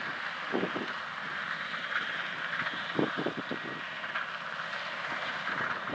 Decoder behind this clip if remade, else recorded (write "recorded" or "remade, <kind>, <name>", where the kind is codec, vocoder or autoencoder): recorded